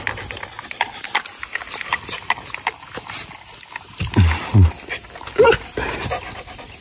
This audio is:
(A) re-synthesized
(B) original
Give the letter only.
B